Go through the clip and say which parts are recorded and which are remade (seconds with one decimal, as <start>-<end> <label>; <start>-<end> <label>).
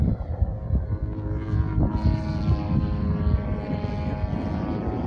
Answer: 0.0-1.0 recorded; 1.0-1.8 remade; 1.8-5.1 recorded